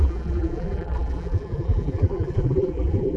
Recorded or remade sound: remade